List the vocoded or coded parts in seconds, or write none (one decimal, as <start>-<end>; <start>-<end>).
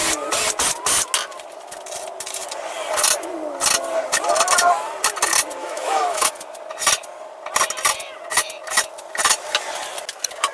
5.6-6.3